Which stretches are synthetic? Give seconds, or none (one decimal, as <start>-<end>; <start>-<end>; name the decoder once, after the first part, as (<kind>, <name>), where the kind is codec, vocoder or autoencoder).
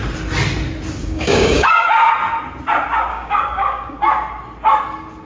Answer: 1.0-2.1 (codec, DAC); 3.1-4.0